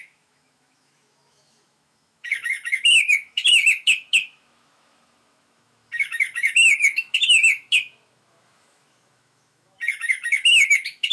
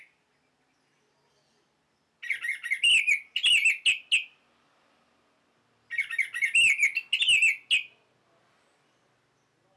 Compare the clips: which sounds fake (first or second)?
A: first